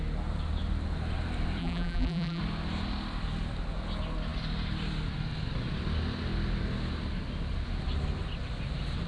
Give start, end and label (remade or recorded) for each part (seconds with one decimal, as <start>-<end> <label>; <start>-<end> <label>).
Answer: 0.0-1.6 recorded; 1.6-2.4 remade; 2.4-9.1 recorded